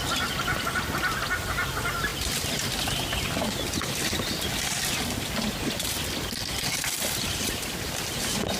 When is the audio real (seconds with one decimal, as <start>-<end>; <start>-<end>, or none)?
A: 0.0-6.7; 7.6-8.6